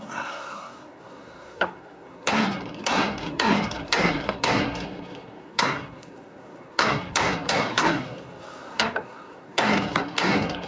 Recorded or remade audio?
remade